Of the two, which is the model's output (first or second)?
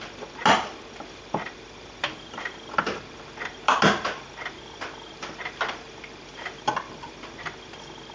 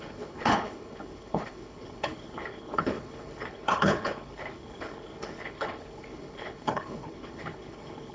second